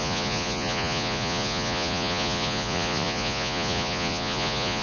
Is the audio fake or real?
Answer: fake